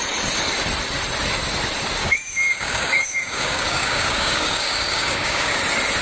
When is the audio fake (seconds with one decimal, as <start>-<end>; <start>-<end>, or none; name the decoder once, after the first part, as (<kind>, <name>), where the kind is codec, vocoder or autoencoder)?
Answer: 2.0-5.6 (codec, DAC)